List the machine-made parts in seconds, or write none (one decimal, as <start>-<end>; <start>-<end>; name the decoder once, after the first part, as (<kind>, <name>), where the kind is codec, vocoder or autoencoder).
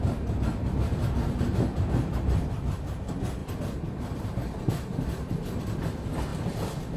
none